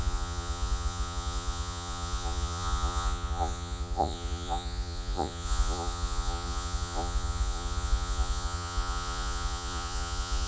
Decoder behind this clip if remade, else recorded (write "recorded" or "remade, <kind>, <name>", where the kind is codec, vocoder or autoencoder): remade, vocoder, Vocos